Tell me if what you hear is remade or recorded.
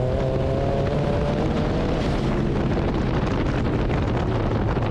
recorded